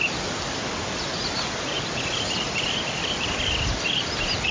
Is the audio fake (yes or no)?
no